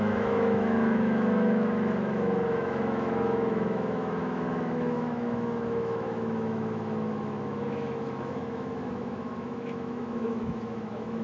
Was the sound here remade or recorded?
remade